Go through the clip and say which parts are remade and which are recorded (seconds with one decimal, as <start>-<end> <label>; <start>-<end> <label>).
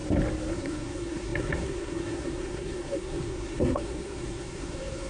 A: 0.0-0.5 recorded; 0.5-5.1 remade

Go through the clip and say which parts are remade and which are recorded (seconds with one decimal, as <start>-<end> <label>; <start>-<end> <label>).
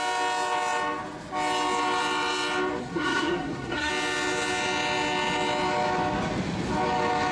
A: 0.0-2.8 recorded; 2.8-3.9 remade; 3.9-7.3 recorded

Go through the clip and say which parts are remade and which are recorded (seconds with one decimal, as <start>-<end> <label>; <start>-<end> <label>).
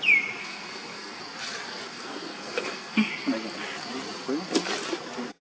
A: 0.0-0.4 recorded; 0.4-1.2 remade; 1.2-1.9 recorded; 1.9-3.1 remade; 3.1-5.5 recorded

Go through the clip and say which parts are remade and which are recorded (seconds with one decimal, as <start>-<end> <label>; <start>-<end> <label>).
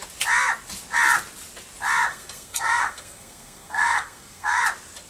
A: 0.0-2.1 recorded; 2.1-4.6 remade; 4.6-5.1 recorded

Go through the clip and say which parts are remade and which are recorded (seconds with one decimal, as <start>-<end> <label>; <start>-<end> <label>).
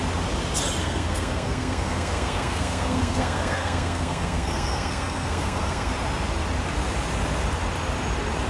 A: 0.0-0.8 recorded; 0.8-5.9 remade; 5.9-8.5 recorded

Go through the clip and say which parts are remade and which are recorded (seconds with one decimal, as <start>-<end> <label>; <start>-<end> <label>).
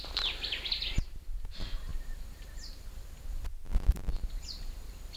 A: 0.0-5.2 recorded